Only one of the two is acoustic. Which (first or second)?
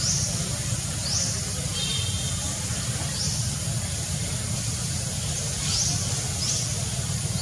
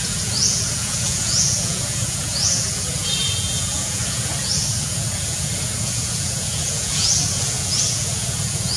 first